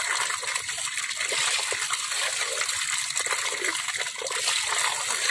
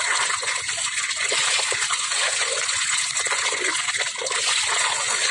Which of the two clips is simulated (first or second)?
second